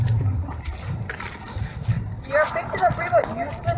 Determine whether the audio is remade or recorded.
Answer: recorded